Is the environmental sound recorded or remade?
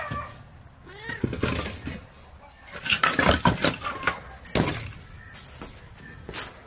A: recorded